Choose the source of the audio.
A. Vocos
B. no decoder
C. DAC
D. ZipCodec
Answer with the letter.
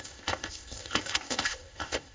D